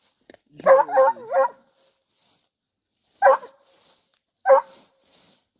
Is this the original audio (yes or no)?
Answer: yes